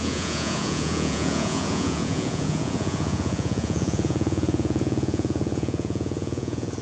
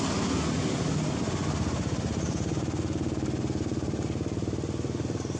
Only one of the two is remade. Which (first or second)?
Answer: first